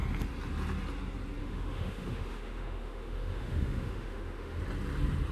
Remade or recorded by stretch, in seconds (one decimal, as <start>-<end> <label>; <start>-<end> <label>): 0.0-1.4 recorded; 1.4-4.6 remade; 4.6-5.3 recorded